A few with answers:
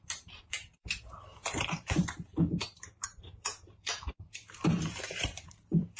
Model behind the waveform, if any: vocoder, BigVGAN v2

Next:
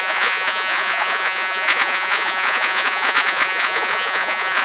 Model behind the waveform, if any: vocoder, Vocos